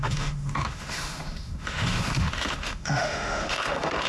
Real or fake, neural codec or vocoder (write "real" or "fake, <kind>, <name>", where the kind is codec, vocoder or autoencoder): fake, autoencoder, DAC-VAE